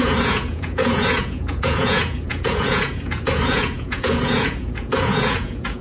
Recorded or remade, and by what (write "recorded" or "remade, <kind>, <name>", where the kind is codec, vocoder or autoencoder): remade, vocoder, Vocos